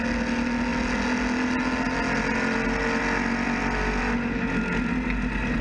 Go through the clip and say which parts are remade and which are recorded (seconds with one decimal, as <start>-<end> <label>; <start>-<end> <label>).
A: 0.0-5.6 recorded